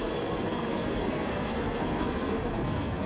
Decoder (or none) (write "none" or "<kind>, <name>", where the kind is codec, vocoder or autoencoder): codec, SNAC